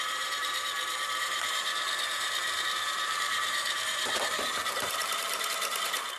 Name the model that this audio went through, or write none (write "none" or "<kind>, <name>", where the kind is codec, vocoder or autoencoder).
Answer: vocoder, BigVGAN v2